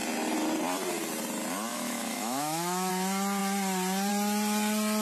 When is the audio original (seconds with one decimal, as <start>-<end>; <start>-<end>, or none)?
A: 0.0-1.7; 2.9-5.0